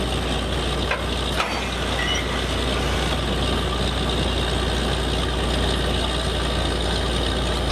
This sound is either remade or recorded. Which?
recorded